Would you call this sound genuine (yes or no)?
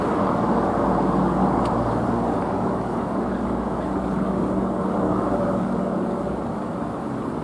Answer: no